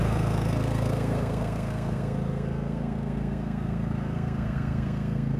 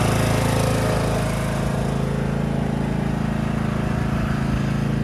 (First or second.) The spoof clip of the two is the first